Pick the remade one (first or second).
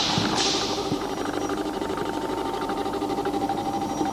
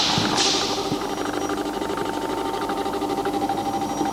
first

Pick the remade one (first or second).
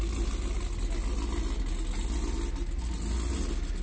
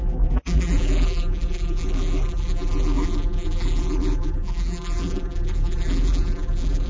second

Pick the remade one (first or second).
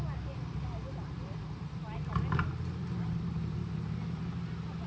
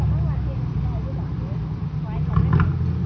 first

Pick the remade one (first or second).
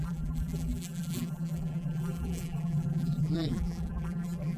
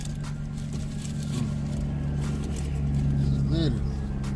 first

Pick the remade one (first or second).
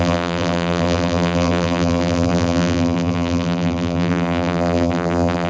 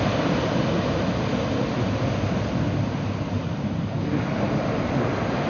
first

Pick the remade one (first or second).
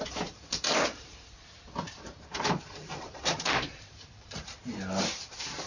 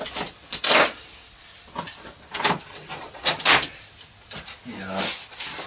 first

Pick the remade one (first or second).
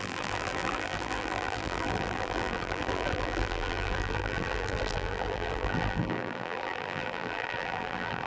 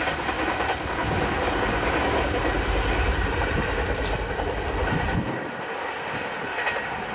first